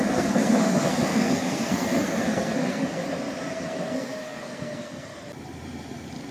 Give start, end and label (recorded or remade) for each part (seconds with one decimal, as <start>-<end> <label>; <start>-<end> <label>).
0.0-3.0 remade; 3.0-3.5 recorded; 3.5-5.1 remade; 5.1-6.3 recorded